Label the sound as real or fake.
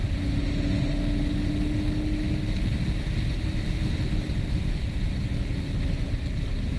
real